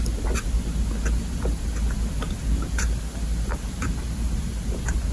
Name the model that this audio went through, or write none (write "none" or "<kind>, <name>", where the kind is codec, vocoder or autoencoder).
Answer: none